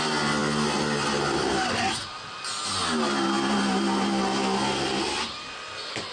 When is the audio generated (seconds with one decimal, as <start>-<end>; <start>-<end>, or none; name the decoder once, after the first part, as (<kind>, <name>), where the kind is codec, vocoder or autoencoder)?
none